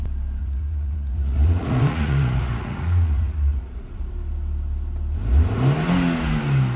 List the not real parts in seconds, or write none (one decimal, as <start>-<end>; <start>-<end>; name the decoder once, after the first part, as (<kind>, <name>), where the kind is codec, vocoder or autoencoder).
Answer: 0.4-4.1 (vocoder, Vocos)